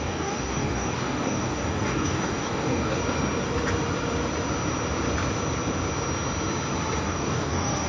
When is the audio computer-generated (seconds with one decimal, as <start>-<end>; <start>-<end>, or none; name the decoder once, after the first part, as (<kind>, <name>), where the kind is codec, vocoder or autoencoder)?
0.0-3.0 (codec, DAC); 7.0-7.9